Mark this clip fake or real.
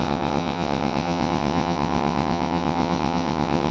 fake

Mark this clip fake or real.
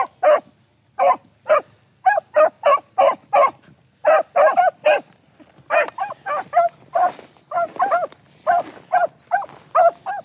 real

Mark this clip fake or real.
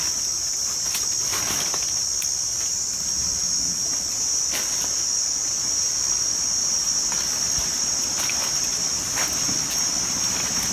fake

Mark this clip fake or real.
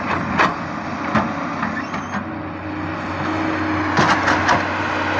real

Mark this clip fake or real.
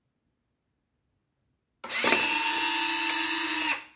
real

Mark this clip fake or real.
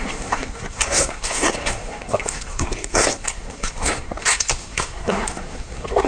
fake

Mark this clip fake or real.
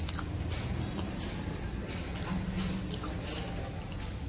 real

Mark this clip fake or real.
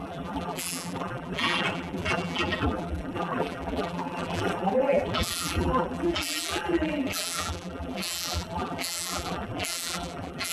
fake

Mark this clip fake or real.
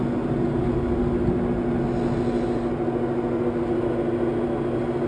real